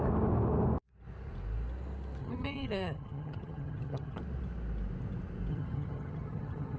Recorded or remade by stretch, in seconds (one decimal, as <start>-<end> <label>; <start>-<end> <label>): 0.0-2.2 recorded; 2.2-4.2 remade; 4.2-5.5 recorded; 5.5-6.8 remade